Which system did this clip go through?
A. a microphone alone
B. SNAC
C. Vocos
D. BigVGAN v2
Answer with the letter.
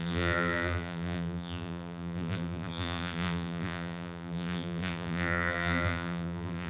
D